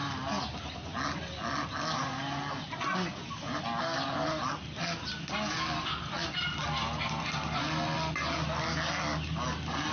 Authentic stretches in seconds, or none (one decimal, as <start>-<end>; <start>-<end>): 0.0-9.9